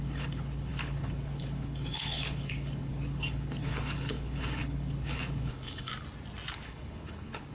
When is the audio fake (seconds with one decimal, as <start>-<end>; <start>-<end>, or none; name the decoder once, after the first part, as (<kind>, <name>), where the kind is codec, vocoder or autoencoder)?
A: 0.0-5.9 (codec, HILCodec); 6.5-7.5